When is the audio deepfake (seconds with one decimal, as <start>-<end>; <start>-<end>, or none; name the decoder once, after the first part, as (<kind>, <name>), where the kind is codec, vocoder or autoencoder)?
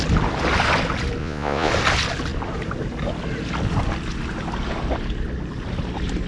1.2-1.7 (vocoder, Vocos)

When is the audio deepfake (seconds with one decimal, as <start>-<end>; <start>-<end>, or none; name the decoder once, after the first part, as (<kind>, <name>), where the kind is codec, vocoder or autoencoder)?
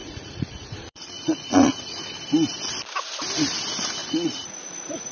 0.0-2.2 (vocoder, Vocos); 4.0-5.1